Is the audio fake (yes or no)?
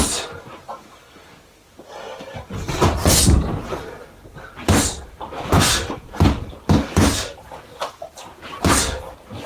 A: no